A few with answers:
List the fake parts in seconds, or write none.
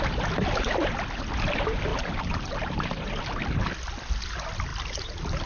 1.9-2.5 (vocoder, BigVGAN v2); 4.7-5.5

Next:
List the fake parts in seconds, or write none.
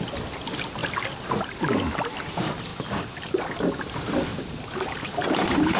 4.3-5.8 (vocoder, BigVGAN v2)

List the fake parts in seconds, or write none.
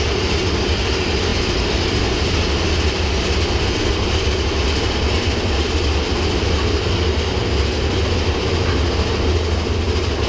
none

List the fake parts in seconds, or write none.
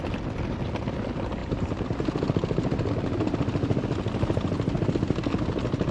none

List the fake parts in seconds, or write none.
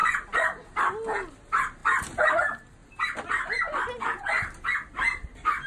0.0-1.3 (vocoder, BigVGAN v2); 1.8-2.3; 2.8-3.3